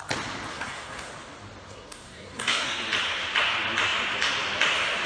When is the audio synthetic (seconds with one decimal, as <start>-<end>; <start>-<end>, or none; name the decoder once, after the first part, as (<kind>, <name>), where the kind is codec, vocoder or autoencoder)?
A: 0.5-1.1 (codec, SNAC); 1.7-2.8